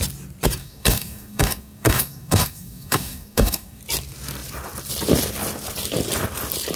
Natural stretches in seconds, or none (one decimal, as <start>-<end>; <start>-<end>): 0.0-0.6; 3.8-6.8